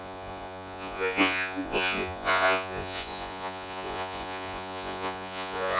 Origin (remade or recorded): remade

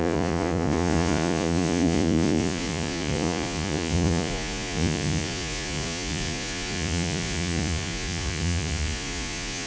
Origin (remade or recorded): remade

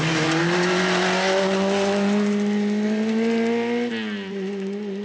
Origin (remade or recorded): recorded